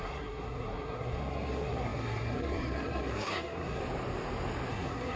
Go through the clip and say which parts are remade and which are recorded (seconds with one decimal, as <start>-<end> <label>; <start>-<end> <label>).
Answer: 0.0-3.8 remade; 3.8-4.7 recorded; 4.7-5.2 remade